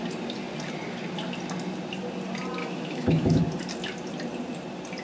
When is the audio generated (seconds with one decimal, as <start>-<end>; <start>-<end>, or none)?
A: 2.6-3.4

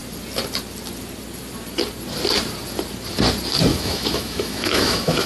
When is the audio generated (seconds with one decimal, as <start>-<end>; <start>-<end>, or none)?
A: 3.7-5.3

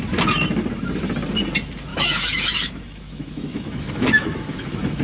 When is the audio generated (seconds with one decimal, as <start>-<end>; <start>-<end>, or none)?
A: 1.9-5.0